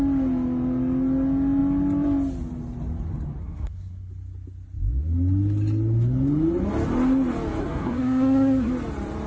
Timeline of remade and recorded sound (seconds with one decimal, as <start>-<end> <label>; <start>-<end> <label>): 0.0-3.4 recorded; 3.4-4.1 remade; 4.1-7.6 recorded; 7.6-8.7 remade; 8.7-9.3 recorded